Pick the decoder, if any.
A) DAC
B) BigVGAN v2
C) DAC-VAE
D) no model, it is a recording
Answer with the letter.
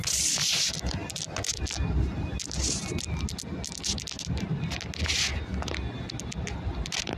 D